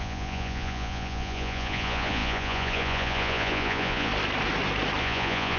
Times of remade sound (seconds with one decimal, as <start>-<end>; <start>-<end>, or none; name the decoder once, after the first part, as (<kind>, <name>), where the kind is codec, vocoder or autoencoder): 0.0-4.1 (vocoder, Vocos); 5.0-5.6